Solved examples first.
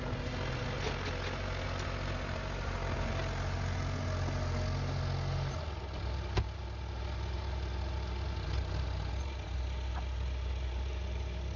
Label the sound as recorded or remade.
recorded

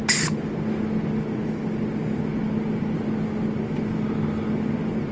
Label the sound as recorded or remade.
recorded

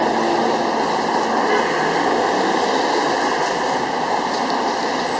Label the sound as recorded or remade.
recorded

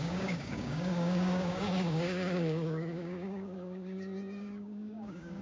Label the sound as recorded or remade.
remade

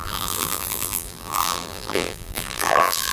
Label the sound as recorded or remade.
remade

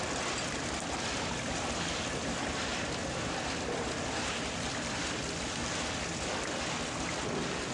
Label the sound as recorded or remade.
recorded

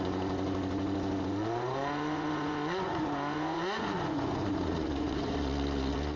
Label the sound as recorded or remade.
remade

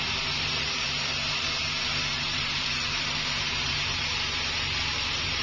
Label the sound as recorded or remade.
remade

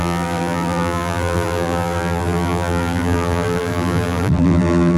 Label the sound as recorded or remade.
remade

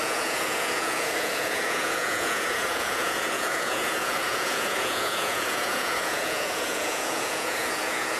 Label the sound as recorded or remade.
remade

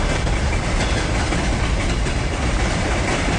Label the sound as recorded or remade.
recorded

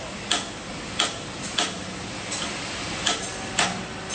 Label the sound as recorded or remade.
recorded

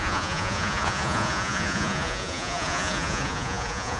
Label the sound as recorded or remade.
remade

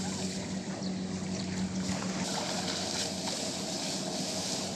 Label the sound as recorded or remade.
recorded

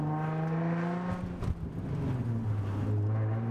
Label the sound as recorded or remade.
recorded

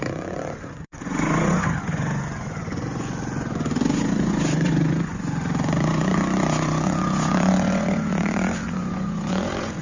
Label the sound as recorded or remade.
remade